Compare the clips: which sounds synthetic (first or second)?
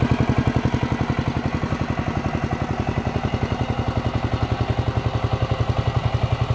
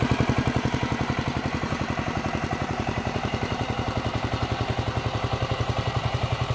second